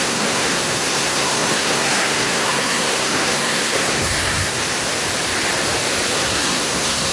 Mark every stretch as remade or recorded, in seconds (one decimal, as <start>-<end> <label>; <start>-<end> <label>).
0.0-4.6 remade; 4.6-6.1 recorded; 6.1-7.1 remade

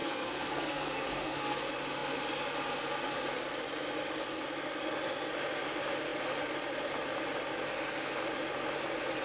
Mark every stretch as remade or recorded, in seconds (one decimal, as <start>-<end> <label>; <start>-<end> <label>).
0.0-1.6 remade; 1.6-9.2 recorded